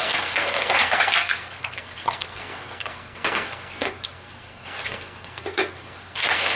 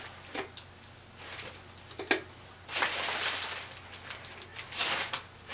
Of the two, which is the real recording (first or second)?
second